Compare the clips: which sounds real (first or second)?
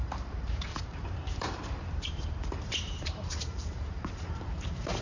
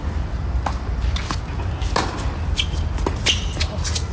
second